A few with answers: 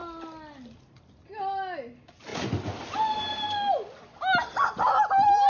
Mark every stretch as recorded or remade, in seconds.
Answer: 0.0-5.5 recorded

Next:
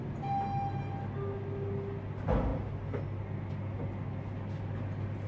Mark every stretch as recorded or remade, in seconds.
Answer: 0.0-5.3 recorded

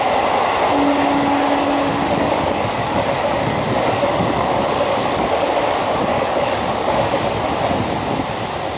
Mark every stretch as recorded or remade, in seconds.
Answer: 0.0-1.9 recorded; 1.9-5.5 remade; 5.5-6.1 recorded; 6.1-7.3 remade; 7.3-8.8 recorded

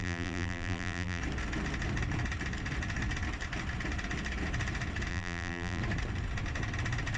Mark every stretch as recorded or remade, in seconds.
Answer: 0.0-1.2 remade; 1.2-5.1 recorded; 5.1-5.8 remade; 5.8-7.2 recorded

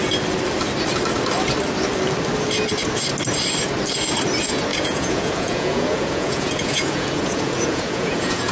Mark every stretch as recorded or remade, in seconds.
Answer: 0.0-4.7 recorded; 4.7-8.5 remade

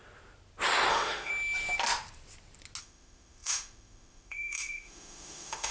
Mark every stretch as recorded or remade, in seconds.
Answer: 0.0-0.9 recorded; 0.9-1.3 remade; 1.3-2.8 recorded; 2.8-5.7 remade

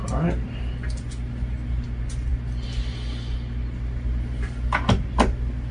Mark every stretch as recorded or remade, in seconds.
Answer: 0.0-5.7 recorded

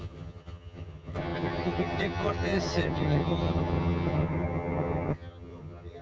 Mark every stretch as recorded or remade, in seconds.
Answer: 0.0-6.0 remade